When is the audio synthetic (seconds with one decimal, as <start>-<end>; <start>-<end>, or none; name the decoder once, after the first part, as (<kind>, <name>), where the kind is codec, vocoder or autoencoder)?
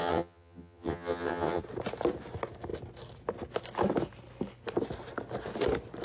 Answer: 0.0-1.6 (vocoder, HiFi-GAN)